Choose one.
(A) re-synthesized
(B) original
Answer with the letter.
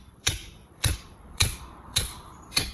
A